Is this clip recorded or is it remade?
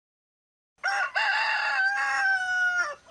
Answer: recorded